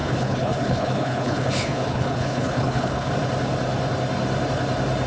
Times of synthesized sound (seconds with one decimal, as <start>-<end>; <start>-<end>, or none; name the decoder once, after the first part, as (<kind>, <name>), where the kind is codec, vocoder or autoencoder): 0.0-3.1 (codec, HILCodec)